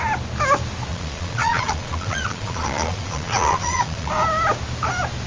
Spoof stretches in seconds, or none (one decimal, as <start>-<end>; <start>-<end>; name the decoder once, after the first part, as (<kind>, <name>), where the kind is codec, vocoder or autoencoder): 0.9-4.1 (vocoder, Vocos)